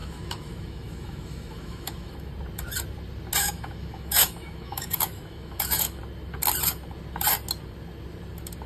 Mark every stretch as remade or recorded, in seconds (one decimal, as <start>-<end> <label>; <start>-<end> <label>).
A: 0.0-2.3 remade; 2.3-3.4 recorded; 3.4-6.0 remade; 6.0-8.7 recorded